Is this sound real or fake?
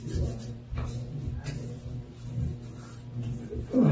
fake